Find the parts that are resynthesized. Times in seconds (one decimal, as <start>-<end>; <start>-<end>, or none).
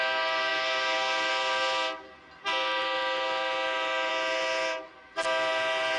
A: none